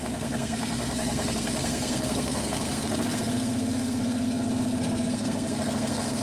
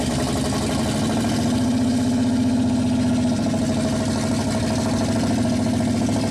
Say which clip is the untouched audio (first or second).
second